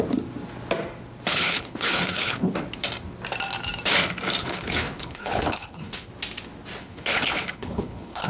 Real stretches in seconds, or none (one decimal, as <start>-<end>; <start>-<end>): 0.0-1.3; 2.5-4.4; 6.1-6.8